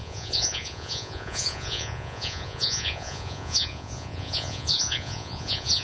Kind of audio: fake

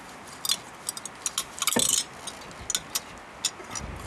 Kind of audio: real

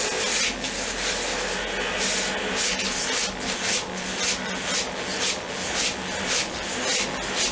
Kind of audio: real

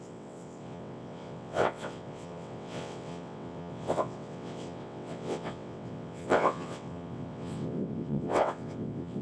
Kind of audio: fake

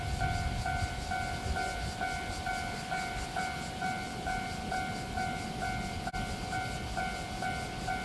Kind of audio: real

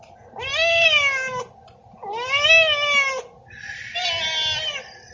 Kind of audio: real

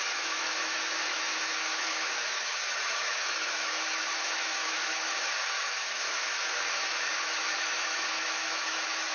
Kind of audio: fake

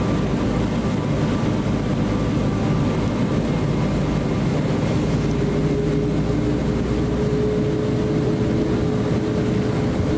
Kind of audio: real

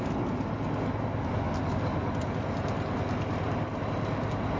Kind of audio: real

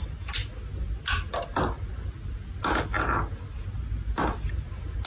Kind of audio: real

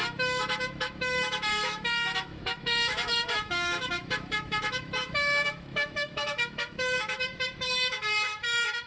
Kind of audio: fake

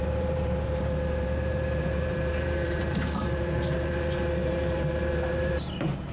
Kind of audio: fake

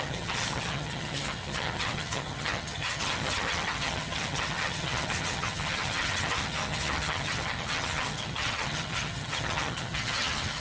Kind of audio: fake